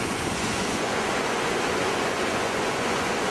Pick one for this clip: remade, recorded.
remade